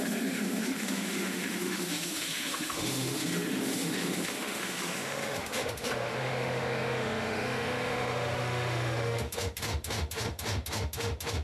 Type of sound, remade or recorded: remade